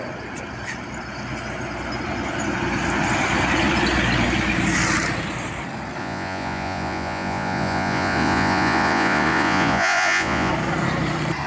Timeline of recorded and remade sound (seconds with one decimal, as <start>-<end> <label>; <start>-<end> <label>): 0.0-6.0 recorded; 6.0-10.5 remade; 10.5-11.5 recorded